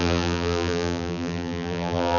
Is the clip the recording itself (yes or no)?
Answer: no